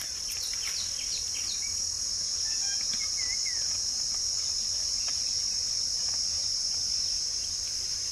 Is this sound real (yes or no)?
yes